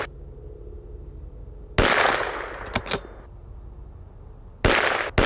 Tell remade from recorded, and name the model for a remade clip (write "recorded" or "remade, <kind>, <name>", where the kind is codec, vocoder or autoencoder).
recorded